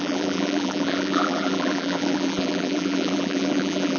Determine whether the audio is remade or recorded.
remade